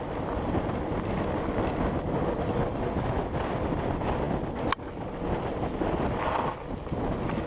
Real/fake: real